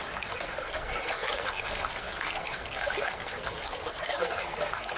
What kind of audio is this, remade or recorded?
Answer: remade